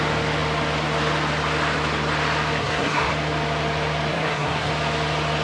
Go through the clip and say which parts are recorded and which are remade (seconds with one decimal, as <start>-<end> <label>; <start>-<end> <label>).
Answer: 0.0-2.6 recorded; 2.6-3.1 remade; 3.1-4.1 recorded; 4.1-4.7 remade; 4.7-5.4 recorded